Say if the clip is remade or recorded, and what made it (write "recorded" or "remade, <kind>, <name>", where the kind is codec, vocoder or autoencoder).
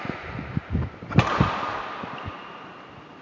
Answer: recorded